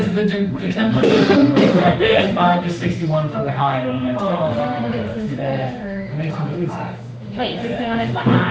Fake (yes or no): yes